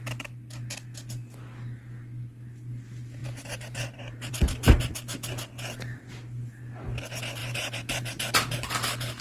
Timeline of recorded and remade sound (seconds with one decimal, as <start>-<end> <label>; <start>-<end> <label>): 0.0-3.2 recorded; 3.2-4.3 remade; 4.3-7.4 recorded; 7.4-8.7 remade; 8.7-9.2 recorded